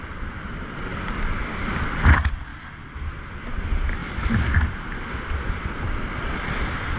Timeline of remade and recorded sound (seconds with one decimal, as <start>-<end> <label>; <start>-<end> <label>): 0.0-2.5 recorded; 2.5-3.4 remade; 3.4-4.0 recorded; 4.0-6.6 remade; 6.6-7.0 recorded